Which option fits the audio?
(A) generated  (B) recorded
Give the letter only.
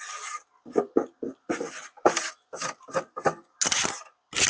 B